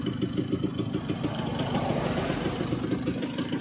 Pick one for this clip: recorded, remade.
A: remade